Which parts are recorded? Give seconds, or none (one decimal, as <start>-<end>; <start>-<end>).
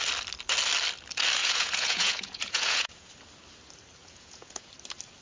0.0-1.4; 3.1-4.0; 4.7-5.2